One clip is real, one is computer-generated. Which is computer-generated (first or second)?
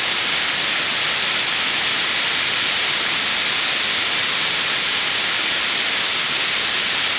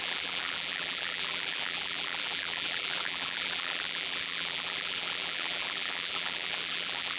second